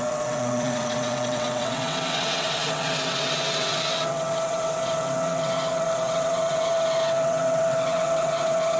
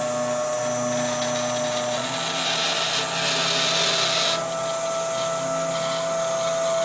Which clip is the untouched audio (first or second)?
second